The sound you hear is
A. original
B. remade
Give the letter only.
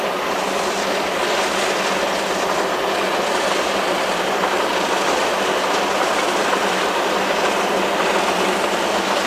A